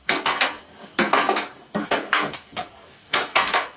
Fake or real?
fake